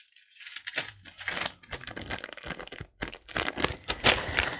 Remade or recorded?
recorded